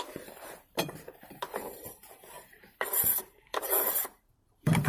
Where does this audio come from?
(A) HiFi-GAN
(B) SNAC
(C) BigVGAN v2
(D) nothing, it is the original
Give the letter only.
C